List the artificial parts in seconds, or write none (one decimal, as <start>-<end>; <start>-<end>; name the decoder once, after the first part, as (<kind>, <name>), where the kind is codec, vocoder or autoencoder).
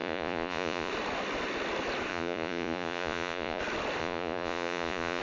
0.0-0.9 (vocoder, Vocos); 2.1-3.6; 4.0-5.2